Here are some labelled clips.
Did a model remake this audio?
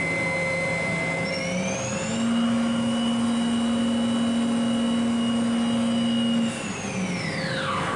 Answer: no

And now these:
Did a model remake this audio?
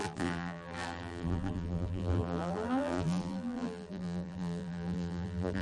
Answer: yes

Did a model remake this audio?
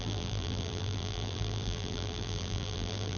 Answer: yes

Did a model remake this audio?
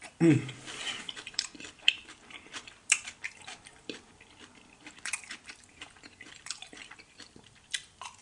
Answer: yes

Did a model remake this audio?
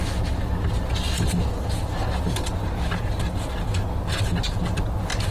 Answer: no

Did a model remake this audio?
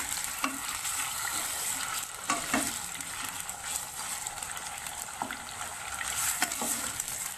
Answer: yes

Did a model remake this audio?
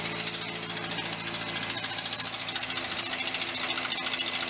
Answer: no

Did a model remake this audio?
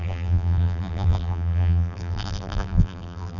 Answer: yes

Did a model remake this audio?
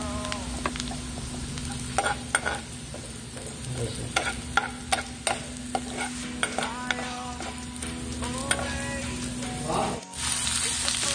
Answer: no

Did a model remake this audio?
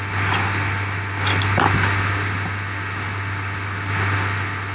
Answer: no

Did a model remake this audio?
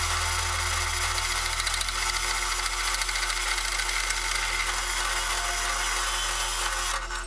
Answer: no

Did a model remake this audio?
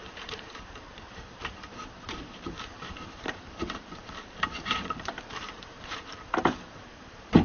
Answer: yes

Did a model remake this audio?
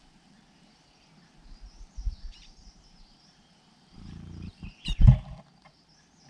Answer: yes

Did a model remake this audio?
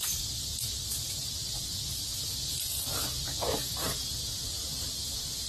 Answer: no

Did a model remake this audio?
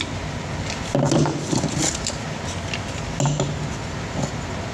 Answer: no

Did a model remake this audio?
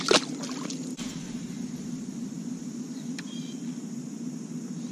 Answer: yes